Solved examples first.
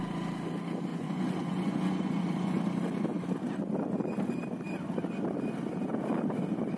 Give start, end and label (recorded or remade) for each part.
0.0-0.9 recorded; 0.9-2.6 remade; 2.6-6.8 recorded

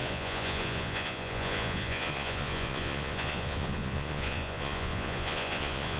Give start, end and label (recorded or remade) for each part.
0.0-6.0 remade

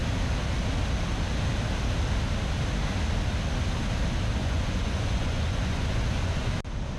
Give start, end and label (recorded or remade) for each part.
0.0-4.4 recorded; 4.4-6.5 remade; 6.5-7.0 recorded

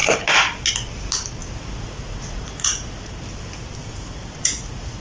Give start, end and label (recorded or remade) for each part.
0.0-1.4 recorded; 1.4-3.1 remade; 3.1-3.8 recorded; 3.8-5.0 remade

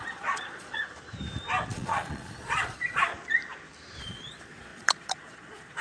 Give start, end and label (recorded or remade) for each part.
0.0-0.8 remade; 0.8-1.7 recorded; 1.7-3.1 remade; 3.1-4.0 recorded; 4.0-5.8 remade

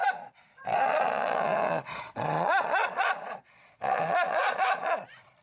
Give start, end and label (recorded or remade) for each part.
0.0-5.4 remade